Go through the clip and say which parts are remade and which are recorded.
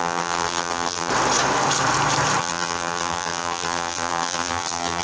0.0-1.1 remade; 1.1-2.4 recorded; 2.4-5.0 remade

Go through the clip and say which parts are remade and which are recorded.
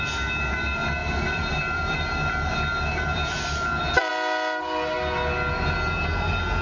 0.0-1.0 recorded; 1.0-4.1 remade; 4.1-6.6 recorded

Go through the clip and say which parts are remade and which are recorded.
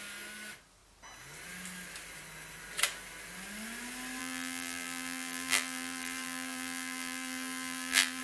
0.0-4.2 recorded; 4.2-8.2 remade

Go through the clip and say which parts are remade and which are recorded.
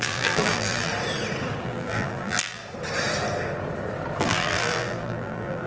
0.0-0.9 remade; 0.9-1.6 recorded; 1.6-2.6 remade; 2.6-4.2 recorded; 4.2-5.7 remade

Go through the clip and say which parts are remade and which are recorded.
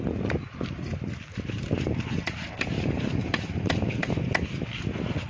0.0-0.9 recorded; 0.9-4.1 remade; 4.1-5.3 recorded